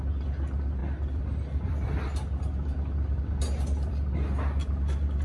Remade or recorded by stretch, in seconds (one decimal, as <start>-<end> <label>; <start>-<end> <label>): 0.0-5.2 recorded

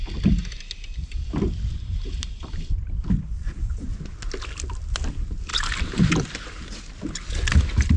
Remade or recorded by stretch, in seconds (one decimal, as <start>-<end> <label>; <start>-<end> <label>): 0.0-8.0 recorded

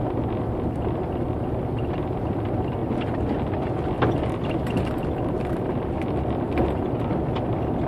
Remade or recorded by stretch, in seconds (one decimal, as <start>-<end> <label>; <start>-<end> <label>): 0.0-7.9 recorded

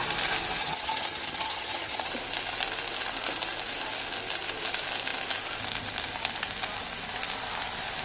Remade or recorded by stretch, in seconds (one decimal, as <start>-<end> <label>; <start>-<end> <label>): 0.0-0.6 recorded; 0.6-2.1 remade; 2.1-8.0 recorded

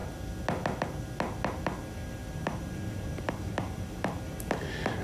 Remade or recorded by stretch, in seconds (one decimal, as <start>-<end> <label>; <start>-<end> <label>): 0.0-2.2 recorded; 2.2-4.2 remade; 4.2-5.0 recorded

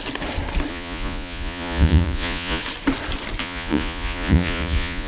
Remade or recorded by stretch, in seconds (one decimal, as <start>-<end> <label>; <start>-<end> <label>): 0.0-0.7 recorded; 0.7-2.6 remade; 2.6-3.4 recorded; 3.4-5.1 remade